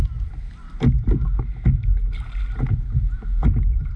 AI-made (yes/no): no